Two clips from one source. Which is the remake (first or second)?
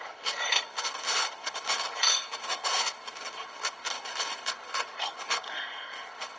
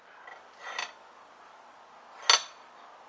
first